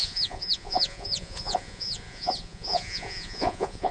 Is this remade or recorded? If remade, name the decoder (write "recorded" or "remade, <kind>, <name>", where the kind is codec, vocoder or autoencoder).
remade, vocoder, Vocos